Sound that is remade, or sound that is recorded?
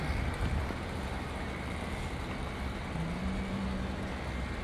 recorded